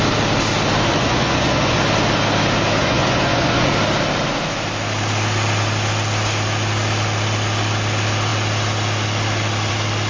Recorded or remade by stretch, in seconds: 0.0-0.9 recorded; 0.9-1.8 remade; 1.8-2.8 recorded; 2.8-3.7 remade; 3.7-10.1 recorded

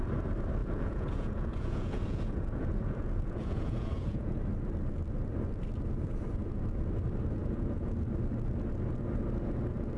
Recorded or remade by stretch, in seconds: 0.0-0.6 recorded; 0.6-4.4 remade; 4.4-7.4 recorded; 7.4-7.9 remade; 7.9-10.0 recorded

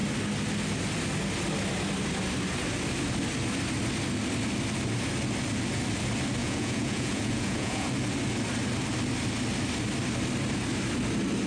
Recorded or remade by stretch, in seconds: 0.0-6.4 recorded; 6.4-7.9 remade; 7.9-11.5 recorded

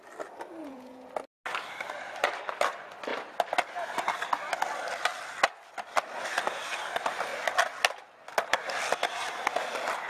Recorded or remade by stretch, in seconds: 0.0-0.6 recorded; 0.6-1.1 remade; 1.1-10.1 recorded